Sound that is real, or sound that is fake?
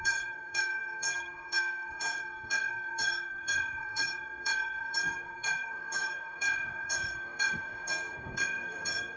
fake